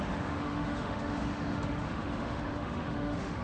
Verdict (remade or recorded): remade